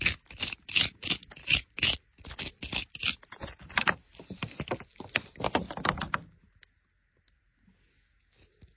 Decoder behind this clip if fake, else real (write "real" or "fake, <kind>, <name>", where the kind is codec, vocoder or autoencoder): real